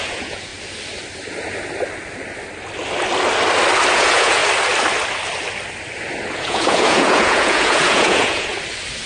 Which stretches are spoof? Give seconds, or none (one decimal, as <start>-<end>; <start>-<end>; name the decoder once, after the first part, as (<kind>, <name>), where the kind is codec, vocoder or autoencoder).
0.0-0.5 (vocoder, Vocos); 3.9-4.4; 6.3-8.5